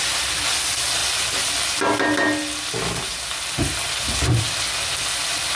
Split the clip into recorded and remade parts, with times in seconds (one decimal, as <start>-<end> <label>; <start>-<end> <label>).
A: 0.0-5.6 recorded

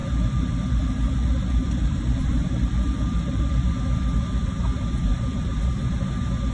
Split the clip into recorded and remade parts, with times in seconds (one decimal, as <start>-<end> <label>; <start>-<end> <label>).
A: 0.0-3.4 remade; 3.4-5.1 recorded; 5.1-6.1 remade; 6.1-6.5 recorded

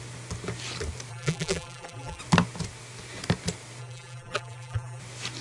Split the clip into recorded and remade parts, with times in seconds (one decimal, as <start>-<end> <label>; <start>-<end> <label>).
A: 0.0-1.1 recorded; 1.1-2.2 remade; 2.2-3.8 recorded; 3.8-5.0 remade; 5.0-5.4 recorded

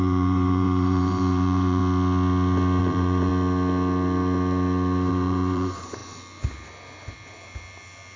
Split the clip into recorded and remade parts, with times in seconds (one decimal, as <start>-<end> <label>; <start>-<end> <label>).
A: 0.0-1.8 remade; 1.8-2.8 recorded; 2.8-3.3 remade; 3.3-5.1 recorded; 5.1-6.0 remade; 6.0-8.2 recorded

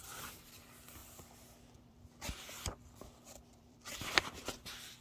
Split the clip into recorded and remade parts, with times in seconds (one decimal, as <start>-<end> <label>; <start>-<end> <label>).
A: 0.0-1.0 recorded; 1.0-4.0 remade; 4.0-5.0 recorded